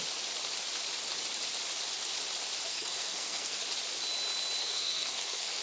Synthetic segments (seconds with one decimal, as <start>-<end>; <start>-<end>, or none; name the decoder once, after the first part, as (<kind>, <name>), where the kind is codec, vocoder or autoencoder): 2.7-3.6 (codec, SNAC); 4.6-5.6